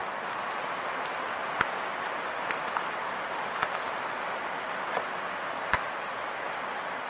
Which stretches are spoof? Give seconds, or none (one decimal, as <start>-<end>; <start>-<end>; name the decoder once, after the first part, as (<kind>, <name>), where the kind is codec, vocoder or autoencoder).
none

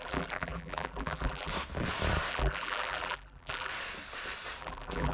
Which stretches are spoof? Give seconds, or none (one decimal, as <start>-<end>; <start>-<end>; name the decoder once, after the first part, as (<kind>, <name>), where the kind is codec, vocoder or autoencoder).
0.0-1.5 (vocoder, BigVGAN v2); 2.3-3.7; 4.6-5.1

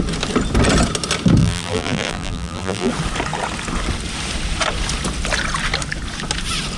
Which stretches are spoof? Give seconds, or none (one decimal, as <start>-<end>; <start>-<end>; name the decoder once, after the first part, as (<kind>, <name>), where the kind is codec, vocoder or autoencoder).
1.4-2.9 (vocoder, BigVGAN v2)

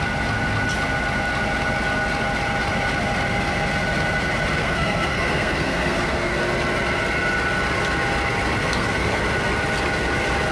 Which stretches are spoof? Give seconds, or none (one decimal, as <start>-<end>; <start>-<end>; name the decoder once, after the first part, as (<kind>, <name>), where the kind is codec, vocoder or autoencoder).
4.6-6.4 (codec, SNAC); 8.6-9.2

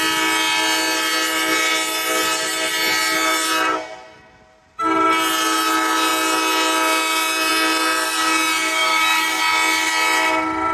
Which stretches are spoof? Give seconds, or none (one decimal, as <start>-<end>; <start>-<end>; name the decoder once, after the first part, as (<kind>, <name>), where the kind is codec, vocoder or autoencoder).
8.8-9.4 (codec, DAC)

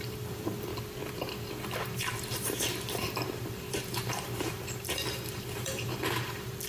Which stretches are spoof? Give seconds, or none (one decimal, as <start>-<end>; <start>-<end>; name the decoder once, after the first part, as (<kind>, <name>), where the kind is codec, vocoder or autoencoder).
0.0-0.7 (vocoder, BigVGAN v2); 1.8-6.7